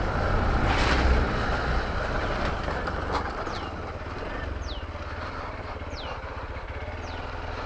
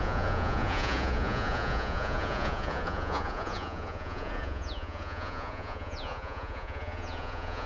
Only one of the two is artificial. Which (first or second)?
second